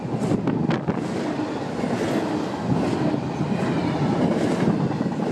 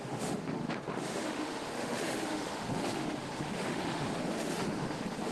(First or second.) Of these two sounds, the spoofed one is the second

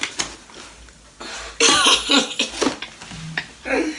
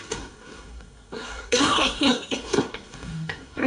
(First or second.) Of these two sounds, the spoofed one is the second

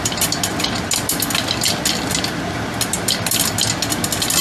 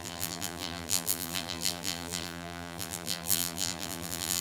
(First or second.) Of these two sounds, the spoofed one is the second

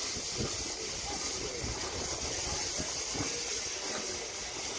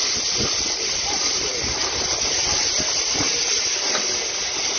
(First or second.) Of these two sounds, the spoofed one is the second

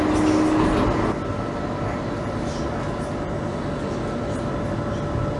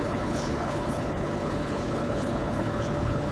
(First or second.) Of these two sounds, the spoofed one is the second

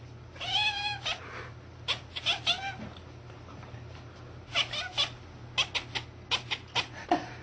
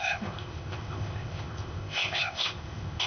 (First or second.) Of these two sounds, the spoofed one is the second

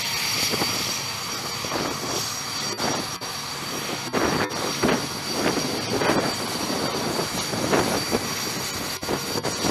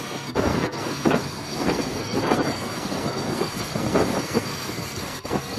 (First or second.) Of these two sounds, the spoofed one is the second